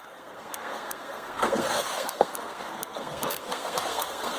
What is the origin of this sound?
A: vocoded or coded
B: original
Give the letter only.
A